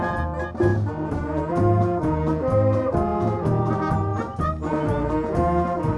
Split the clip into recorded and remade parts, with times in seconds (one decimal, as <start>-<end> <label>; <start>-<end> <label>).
0.0-6.0 recorded